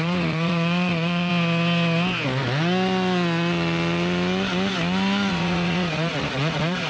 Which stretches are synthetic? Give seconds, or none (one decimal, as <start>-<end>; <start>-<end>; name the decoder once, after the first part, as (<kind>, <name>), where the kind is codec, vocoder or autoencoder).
0.0-1.3 (vocoder, Vocos); 5.3-6.9